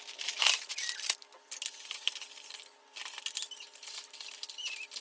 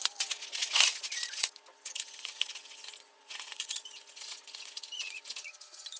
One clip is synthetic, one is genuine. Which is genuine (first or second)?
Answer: first